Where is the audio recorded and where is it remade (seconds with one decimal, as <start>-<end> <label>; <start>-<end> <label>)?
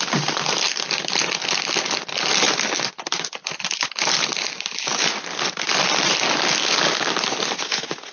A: 0.0-8.1 recorded